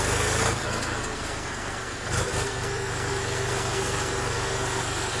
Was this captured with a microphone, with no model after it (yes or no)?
no